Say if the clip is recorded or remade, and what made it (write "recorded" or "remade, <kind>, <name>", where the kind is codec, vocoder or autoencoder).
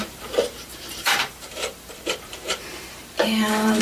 remade, vocoder, BigVGAN v2